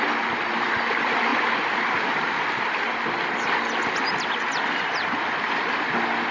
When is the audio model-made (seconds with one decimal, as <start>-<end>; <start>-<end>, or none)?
none